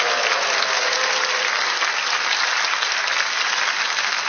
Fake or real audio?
real